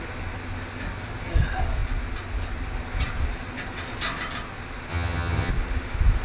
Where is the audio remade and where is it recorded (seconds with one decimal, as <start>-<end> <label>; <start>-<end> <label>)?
0.0-4.9 recorded; 4.9-5.5 remade; 5.5-6.2 recorded